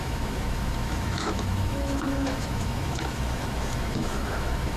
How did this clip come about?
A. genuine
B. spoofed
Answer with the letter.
B